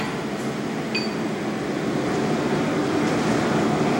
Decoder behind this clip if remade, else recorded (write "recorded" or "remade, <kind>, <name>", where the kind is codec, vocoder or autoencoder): recorded